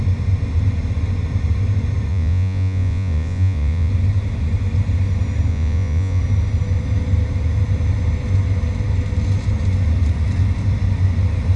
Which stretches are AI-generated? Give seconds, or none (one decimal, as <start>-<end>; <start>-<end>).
2.1-3.9; 5.5-6.2